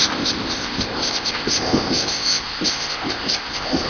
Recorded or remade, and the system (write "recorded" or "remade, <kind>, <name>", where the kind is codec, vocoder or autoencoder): remade, codec, ZipCodec